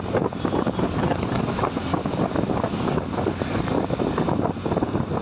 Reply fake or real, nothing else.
fake